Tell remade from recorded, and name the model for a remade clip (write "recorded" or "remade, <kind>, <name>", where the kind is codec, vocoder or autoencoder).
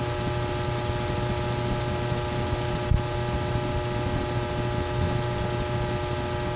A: recorded